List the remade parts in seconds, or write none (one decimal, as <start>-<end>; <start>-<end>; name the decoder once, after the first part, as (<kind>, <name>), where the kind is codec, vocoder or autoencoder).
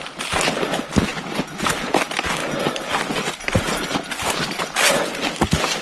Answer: none